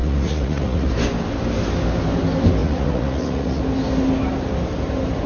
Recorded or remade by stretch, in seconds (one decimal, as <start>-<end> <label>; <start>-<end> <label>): 0.0-0.9 remade; 0.9-2.6 recorded; 2.6-3.6 remade; 3.6-5.3 recorded